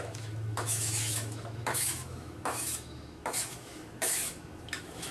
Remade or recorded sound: remade